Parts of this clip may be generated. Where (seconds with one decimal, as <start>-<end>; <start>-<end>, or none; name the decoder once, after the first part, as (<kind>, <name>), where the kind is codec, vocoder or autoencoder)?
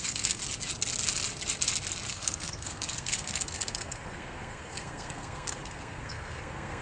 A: 0.0-0.4 (codec, SNAC); 2.1-6.8